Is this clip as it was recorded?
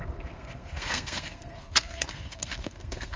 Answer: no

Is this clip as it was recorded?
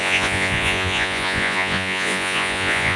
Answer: no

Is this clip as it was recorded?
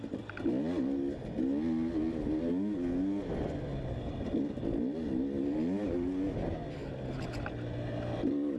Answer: yes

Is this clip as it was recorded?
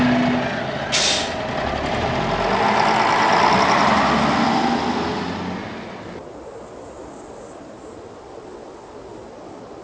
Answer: yes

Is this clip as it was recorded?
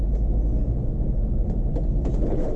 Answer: yes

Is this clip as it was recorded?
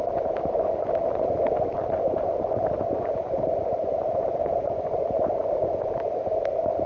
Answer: no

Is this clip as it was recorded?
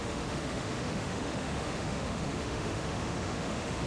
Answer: no